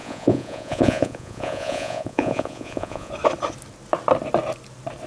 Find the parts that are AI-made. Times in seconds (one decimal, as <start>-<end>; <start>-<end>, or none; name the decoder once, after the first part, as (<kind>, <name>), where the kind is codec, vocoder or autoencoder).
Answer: 0.0-3.1 (vocoder, Vocos)